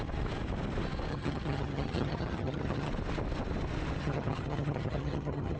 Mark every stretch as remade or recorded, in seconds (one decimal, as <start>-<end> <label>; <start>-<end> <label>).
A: 0.0-1.1 recorded; 1.1-2.9 remade; 2.9-4.0 recorded; 4.0-5.6 remade